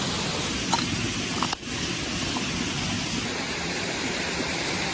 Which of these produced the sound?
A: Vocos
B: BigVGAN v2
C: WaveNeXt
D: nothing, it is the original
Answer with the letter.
D